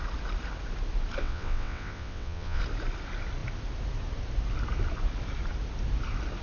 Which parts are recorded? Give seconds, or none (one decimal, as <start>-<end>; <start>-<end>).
0.0-1.2; 2.6-6.4